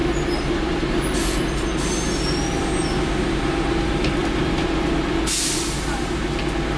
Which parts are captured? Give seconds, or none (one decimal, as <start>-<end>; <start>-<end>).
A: 0.0-6.8